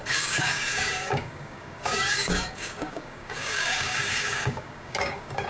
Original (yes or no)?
no